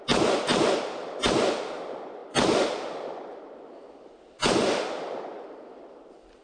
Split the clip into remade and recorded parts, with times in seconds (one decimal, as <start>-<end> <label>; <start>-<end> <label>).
0.0-2.2 recorded; 2.2-6.0 remade; 6.0-6.4 recorded